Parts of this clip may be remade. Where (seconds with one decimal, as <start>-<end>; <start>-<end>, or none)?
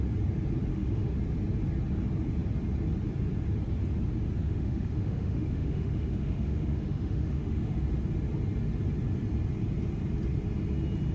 0.7-1.2; 4.4-7.8